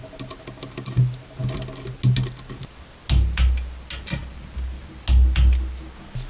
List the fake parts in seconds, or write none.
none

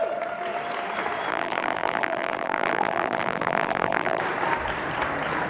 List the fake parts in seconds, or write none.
1.3-4.2

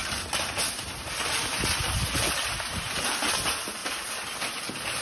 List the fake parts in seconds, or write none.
none